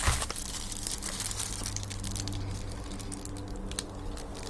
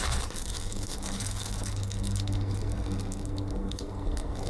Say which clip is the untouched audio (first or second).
first